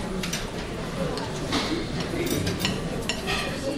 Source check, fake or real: fake